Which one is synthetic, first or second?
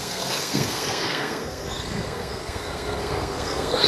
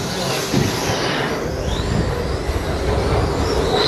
first